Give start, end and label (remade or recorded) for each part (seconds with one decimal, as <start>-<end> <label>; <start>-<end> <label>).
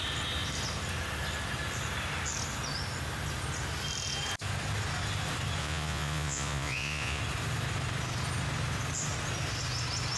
0.0-5.6 recorded; 5.6-7.2 remade; 7.2-10.2 recorded